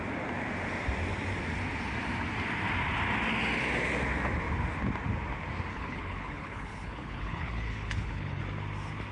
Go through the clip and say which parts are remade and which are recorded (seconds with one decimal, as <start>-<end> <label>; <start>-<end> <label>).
0.0-5.7 recorded; 5.7-8.4 remade; 8.4-9.1 recorded